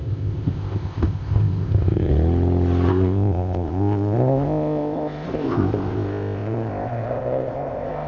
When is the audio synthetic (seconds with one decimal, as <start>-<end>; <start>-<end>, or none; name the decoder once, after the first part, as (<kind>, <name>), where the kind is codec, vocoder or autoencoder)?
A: 0.0-2.1 (codec, ZipCodec); 2.9-8.1